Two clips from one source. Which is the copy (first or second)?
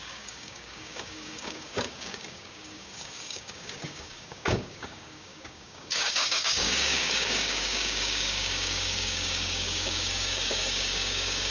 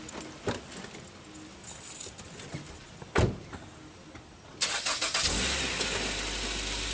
first